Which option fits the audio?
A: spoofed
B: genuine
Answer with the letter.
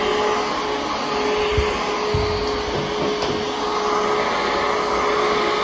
B